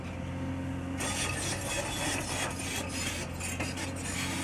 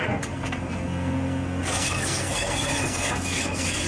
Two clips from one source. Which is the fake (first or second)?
second